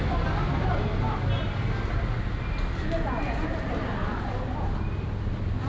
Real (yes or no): yes